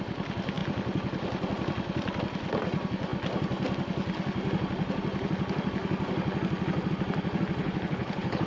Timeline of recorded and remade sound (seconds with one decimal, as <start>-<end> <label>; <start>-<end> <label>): 0.0-7.6 recorded; 7.6-8.5 remade